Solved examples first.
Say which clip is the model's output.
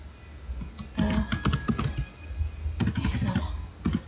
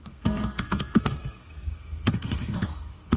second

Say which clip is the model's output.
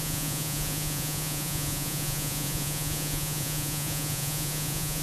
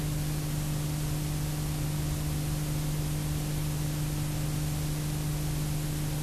first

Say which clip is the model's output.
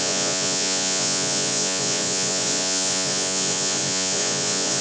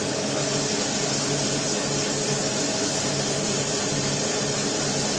first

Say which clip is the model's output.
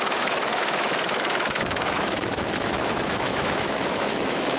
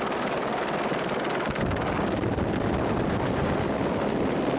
first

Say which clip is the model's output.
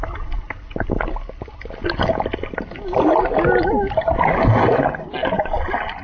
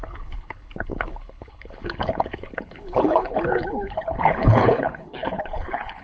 second